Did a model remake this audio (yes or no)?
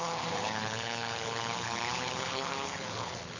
yes